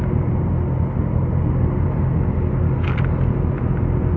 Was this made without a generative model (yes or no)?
yes